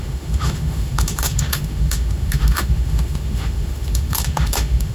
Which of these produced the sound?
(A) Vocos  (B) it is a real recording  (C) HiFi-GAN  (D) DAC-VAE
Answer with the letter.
D